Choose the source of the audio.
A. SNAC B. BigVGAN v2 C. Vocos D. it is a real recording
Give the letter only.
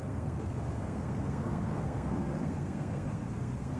A